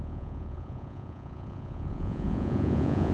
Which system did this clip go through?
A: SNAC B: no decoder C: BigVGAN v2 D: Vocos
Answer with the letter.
D